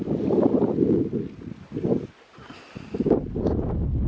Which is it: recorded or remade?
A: recorded